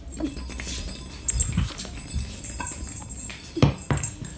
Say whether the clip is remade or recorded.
recorded